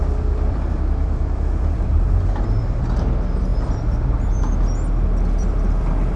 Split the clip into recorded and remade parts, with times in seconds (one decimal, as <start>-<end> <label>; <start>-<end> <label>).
0.0-6.2 remade

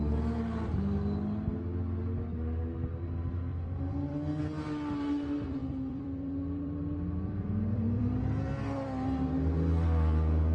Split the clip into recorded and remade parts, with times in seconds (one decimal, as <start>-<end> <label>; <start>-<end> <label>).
0.0-3.5 recorded; 3.5-4.4 remade; 4.4-5.6 recorded; 5.6-8.2 remade; 8.2-10.5 recorded

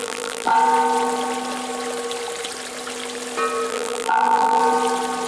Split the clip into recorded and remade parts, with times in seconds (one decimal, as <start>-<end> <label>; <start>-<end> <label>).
0.0-0.5 remade; 0.5-3.7 recorded; 3.7-4.6 remade; 4.6-5.3 recorded

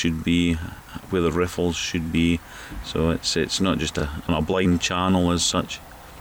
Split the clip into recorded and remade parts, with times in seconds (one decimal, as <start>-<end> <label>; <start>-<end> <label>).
0.0-1.8 recorded; 1.8-2.4 remade; 2.4-4.0 recorded; 4.0-6.2 remade

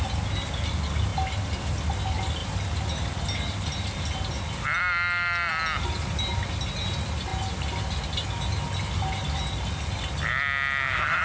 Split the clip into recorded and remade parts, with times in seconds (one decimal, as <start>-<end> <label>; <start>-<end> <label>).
0.0-11.2 recorded